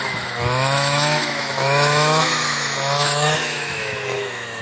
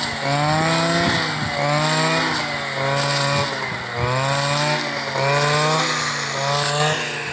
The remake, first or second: first